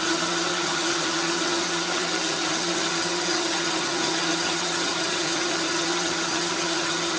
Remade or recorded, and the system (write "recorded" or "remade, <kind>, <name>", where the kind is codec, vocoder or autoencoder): remade, vocoder, HiFi-GAN